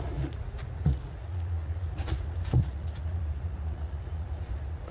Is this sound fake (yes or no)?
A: yes